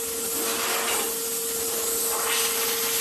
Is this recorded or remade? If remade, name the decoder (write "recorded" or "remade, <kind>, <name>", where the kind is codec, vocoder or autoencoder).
recorded